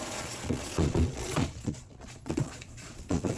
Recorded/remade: remade